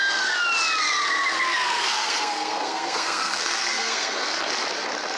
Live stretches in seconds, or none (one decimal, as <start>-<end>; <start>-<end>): 0.0-1.6; 4.4-5.2